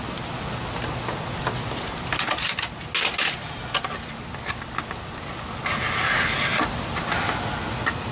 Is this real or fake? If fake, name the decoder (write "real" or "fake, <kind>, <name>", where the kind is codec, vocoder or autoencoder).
real